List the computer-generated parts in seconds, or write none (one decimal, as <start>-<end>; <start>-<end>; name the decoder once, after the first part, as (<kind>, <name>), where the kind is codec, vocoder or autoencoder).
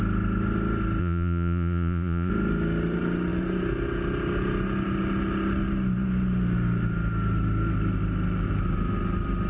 1.0-2.3 (vocoder, Vocos)